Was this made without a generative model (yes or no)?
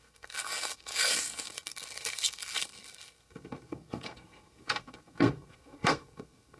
no